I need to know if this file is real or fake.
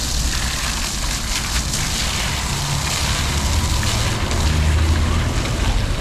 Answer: real